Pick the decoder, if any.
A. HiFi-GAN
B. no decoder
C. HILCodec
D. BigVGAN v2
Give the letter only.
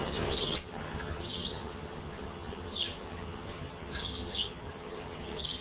A